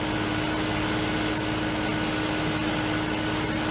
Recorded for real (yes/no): yes